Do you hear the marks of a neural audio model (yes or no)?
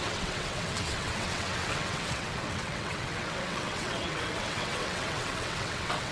yes